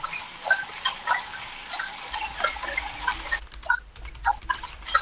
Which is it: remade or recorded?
recorded